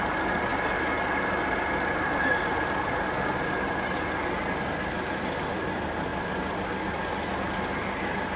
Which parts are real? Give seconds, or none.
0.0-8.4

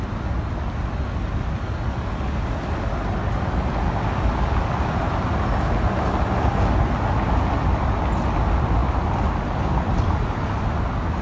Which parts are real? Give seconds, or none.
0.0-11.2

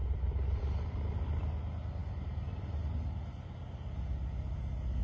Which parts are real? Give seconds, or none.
1.4-5.0

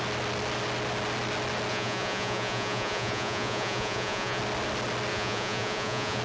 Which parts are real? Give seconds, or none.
0.0-1.7; 4.4-5.1

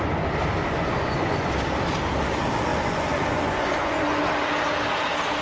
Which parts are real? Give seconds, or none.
0.0-0.6; 1.5-2.7; 4.2-5.4

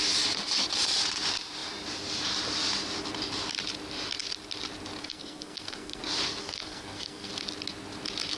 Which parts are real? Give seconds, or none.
0.0-5.0; 6.0-6.4; 7.3-8.4

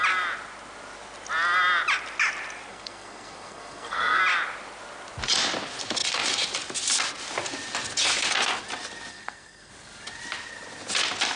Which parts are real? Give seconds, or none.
0.0-2.7; 4.2-9.1; 9.7-11.4